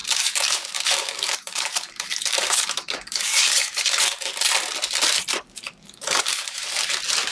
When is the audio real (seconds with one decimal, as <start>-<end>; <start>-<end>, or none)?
4.3-5.4; 6.6-7.3